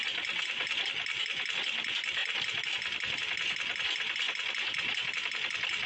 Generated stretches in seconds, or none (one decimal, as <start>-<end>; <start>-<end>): none